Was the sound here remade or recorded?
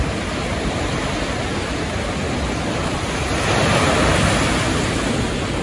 recorded